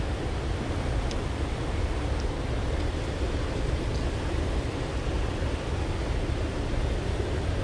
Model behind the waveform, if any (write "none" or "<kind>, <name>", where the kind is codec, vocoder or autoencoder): none